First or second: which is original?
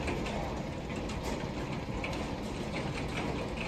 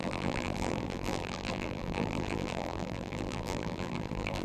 first